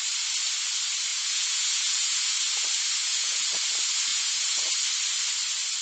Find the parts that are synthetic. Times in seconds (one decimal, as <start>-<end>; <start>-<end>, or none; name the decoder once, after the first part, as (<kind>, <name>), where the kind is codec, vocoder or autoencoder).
1.1-2.2 (vocoder, Vocos); 3.0-3.6; 4.1-4.7